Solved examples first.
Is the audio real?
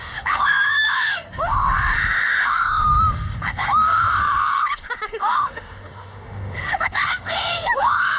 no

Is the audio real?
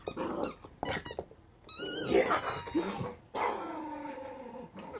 yes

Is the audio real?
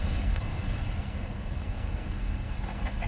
no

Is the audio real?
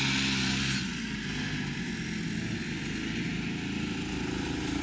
yes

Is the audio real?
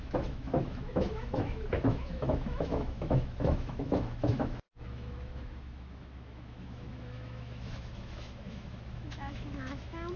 no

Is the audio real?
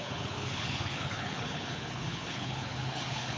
no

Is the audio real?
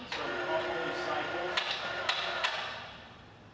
yes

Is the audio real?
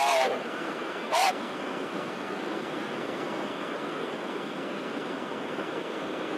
no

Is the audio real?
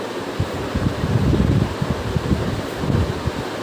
yes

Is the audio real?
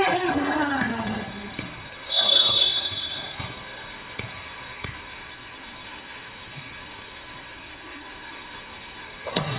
no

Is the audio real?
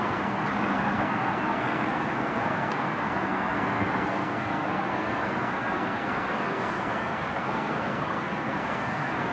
no